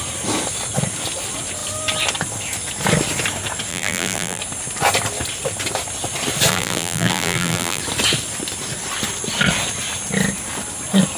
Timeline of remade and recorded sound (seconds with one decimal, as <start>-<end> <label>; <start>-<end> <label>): 0.0-3.7 recorded; 3.7-4.4 remade; 4.4-6.5 recorded; 6.5-7.8 remade; 7.8-11.2 recorded